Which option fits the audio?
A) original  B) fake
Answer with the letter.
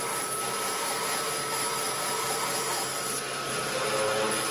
B